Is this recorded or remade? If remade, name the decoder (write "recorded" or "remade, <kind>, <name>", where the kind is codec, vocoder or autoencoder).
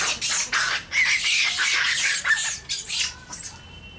recorded